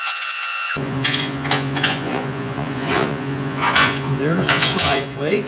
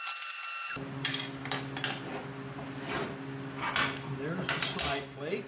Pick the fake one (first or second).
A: first